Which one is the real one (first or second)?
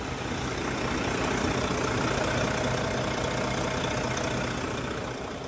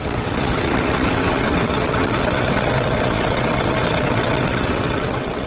first